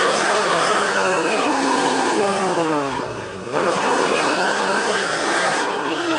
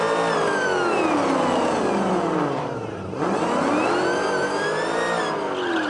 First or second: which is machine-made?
first